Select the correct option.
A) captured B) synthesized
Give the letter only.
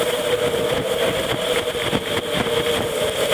A